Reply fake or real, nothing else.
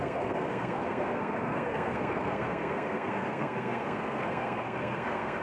fake